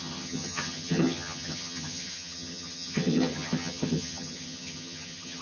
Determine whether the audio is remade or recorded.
remade